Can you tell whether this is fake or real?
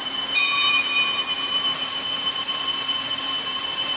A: fake